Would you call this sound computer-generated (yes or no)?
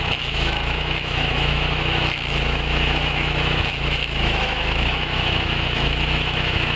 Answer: yes